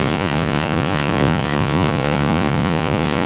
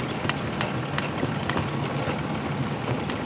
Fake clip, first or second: first